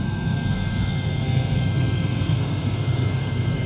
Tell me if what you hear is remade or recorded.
remade